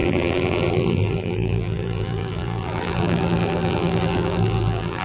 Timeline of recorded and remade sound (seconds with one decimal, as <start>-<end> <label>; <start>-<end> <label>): 0.0-5.0 remade